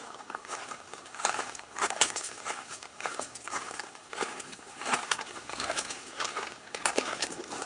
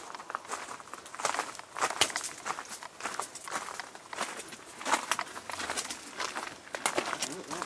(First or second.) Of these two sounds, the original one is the second